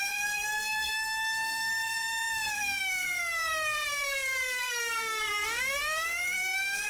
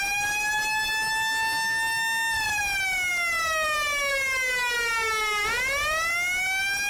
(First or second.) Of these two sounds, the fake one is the first